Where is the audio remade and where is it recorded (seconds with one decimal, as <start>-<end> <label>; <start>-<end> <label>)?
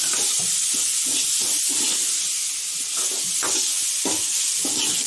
0.0-5.1 recorded